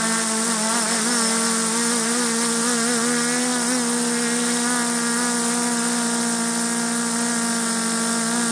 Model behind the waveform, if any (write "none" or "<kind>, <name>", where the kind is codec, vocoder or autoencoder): none